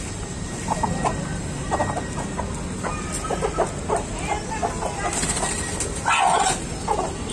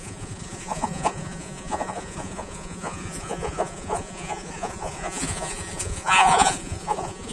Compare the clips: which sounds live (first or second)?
first